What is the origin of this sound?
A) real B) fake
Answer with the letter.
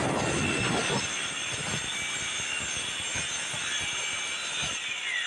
A